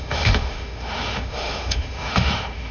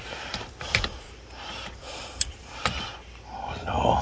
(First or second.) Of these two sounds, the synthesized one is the first